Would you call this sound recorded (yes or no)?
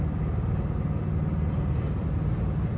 yes